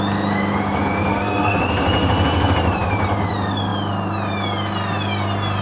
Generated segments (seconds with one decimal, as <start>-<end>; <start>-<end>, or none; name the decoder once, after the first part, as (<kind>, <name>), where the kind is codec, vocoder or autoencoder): 1.1-1.6 (codec, SNAC)